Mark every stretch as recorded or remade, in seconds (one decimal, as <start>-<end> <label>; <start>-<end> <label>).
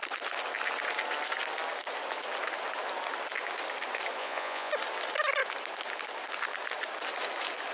0.0-4.2 recorded; 4.2-4.7 remade; 4.7-7.7 recorded